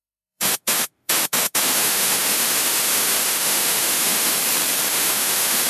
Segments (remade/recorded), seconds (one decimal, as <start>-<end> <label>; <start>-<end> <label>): 0.0-4.4 remade; 4.4-4.9 recorded; 4.9-5.7 remade